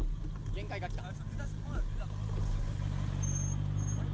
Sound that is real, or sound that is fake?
real